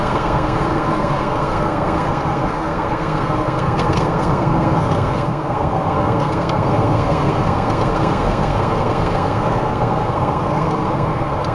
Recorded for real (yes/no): no